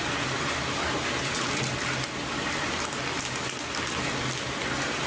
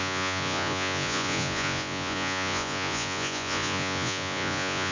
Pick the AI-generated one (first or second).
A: second